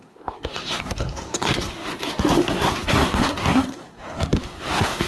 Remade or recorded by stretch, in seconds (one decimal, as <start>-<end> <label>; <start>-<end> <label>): 0.0-5.1 remade